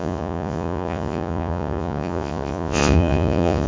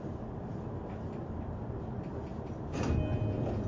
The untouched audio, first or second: second